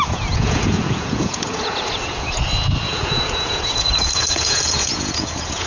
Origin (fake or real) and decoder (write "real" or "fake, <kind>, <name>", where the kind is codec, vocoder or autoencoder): fake, vocoder, Vocos